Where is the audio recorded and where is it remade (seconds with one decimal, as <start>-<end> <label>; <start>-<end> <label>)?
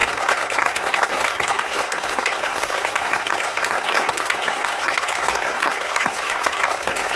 0.0-7.2 remade